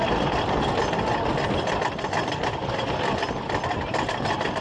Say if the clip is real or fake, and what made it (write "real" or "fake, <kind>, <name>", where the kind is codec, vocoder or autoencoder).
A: real